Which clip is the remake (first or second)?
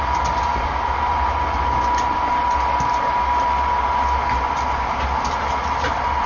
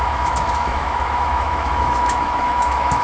second